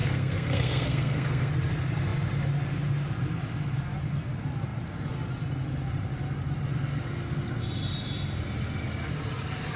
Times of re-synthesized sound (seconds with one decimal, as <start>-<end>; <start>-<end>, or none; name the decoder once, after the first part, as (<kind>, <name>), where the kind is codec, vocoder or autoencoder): 0.0-1.5 (codec, SNAC)